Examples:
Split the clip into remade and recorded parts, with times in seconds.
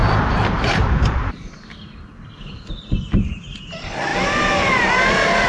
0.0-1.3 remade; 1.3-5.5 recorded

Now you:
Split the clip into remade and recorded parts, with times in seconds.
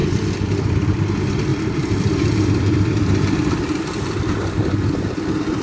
0.0-1.0 remade; 1.0-1.5 recorded; 1.5-4.9 remade; 4.9-5.6 recorded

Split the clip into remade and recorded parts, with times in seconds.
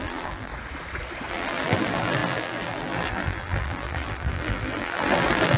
0.0-0.5 remade; 0.5-1.3 recorded; 1.3-5.6 remade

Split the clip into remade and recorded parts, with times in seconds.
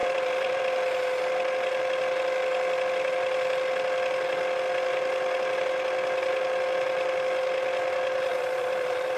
0.0-0.6 remade; 0.6-8.3 recorded; 8.3-9.2 remade